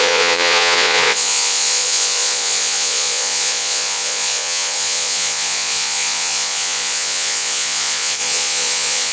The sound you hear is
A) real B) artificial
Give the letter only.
B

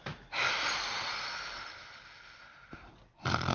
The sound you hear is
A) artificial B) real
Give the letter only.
B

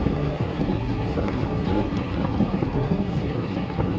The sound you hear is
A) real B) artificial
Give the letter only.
B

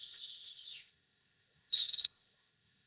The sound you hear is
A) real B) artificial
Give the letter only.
B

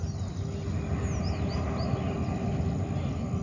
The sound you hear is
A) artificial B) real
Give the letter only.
B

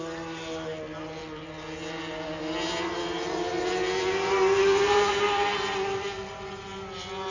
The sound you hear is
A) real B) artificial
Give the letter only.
A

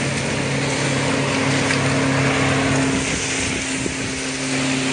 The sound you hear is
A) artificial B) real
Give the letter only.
B